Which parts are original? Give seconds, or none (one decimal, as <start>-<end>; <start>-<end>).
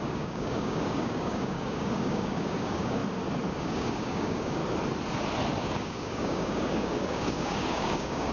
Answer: 3.0-3.6; 4.6-5.6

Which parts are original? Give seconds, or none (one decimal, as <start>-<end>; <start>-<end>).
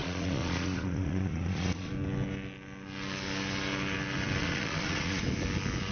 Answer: 1.9-4.4; 5.2-5.9